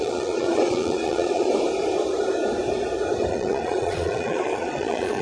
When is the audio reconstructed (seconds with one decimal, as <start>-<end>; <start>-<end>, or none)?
0.0-1.5; 3.3-5.2